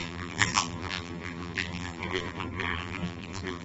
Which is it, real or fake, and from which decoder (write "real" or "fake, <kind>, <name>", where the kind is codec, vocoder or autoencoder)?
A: fake, vocoder, BigVGAN v2